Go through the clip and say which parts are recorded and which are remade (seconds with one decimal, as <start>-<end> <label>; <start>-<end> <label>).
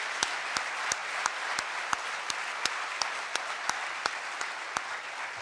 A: 0.0-5.4 recorded